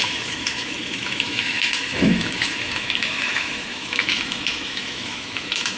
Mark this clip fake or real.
fake